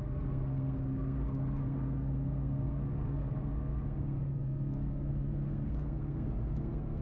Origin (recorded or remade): remade